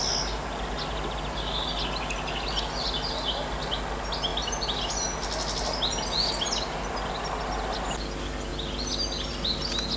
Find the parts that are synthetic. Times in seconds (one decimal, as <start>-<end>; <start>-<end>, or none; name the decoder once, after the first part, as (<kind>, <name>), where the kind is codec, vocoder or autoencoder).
none